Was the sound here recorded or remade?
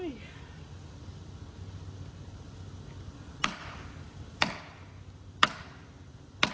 recorded